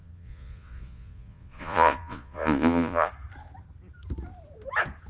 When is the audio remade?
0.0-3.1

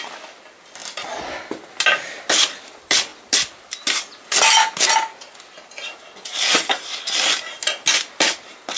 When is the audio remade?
none

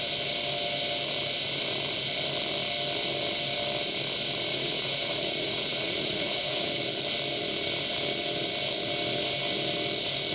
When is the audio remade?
4.5-6.7